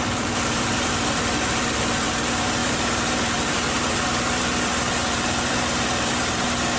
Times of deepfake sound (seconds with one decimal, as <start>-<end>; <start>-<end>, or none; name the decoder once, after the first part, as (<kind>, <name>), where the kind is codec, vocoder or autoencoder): 0.0-6.8 (vocoder, BigVGAN v2)